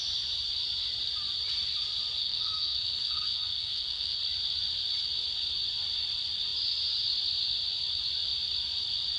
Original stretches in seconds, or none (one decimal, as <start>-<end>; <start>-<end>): 0.0-2.2; 4.2-9.2